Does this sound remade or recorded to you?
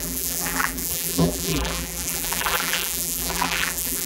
remade